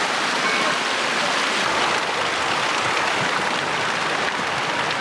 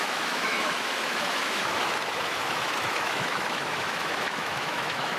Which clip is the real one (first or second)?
first